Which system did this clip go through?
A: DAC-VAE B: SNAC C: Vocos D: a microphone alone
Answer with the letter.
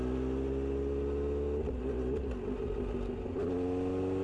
D